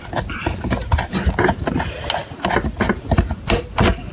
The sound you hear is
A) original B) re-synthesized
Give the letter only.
A